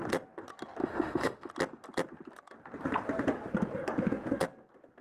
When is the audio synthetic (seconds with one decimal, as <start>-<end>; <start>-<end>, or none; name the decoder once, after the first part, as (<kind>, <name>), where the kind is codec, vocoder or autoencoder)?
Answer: 0.8-1.5 (autoencoder, DAC-VAE)